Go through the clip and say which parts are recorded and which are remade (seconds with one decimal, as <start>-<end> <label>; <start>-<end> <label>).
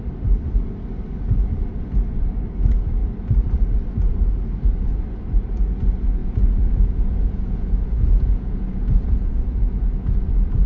0.0-6.2 recorded; 6.2-10.7 remade